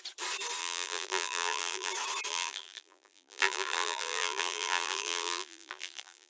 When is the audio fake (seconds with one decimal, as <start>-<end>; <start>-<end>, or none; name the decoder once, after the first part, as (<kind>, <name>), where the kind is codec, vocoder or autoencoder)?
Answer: 0.6-1.9 (vocoder, BigVGAN v2); 2.3-6.3